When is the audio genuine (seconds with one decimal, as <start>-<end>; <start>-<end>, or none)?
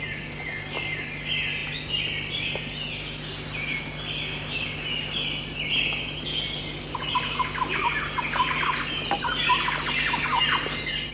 0.0-11.1